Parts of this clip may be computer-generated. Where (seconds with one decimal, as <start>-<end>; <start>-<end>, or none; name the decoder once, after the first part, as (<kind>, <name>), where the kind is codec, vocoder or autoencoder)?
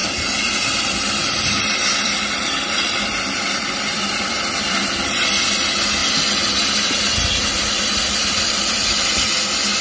0.0-6.0 (vocoder, BigVGAN v2); 7.8-9.8